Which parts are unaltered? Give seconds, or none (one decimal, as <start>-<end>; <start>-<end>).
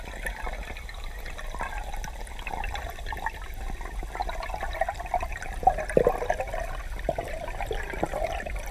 0.0-4.2; 7.8-8.7